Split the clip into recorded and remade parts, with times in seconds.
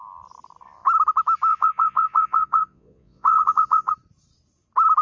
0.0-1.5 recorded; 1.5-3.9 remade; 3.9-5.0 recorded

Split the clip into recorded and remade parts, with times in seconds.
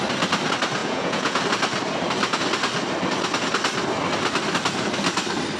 0.0-0.8 recorded; 0.8-1.4 remade; 1.4-5.6 recorded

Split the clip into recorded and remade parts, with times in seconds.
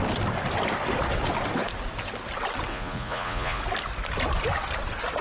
0.0-2.7 recorded; 2.7-3.6 remade; 3.6-5.2 recorded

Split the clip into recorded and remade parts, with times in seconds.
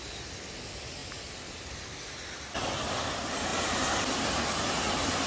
0.0-5.3 recorded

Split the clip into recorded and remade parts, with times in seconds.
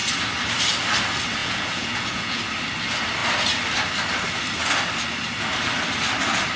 0.0-1.4 recorded; 1.4-2.4 remade; 2.4-6.6 recorded